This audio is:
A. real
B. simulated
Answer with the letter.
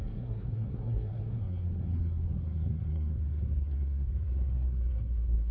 B